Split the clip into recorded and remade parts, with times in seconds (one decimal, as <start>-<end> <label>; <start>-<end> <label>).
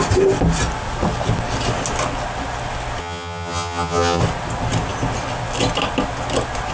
0.0-3.0 recorded; 3.0-4.2 remade; 4.2-6.7 recorded